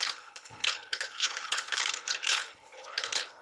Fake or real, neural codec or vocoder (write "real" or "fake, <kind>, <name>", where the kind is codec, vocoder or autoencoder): fake, codec, HILCodec